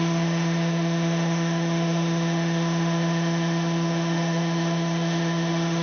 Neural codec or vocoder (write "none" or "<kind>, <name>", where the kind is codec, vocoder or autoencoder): autoencoder, DAC-VAE